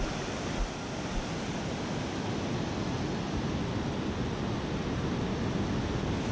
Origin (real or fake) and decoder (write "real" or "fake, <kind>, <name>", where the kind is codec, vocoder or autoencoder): real